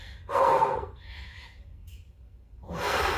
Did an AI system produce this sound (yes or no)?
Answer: yes